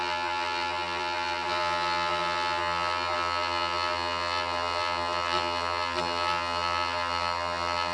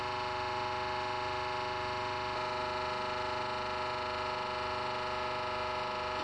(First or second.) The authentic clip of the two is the second